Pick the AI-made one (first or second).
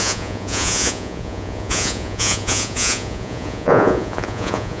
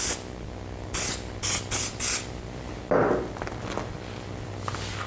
first